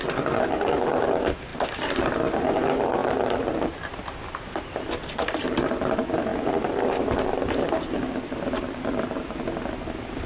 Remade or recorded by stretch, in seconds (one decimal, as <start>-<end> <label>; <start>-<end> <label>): 0.0-10.3 recorded